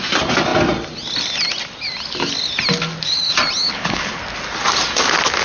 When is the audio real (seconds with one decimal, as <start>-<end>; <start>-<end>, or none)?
0.0-3.7; 4.2-5.4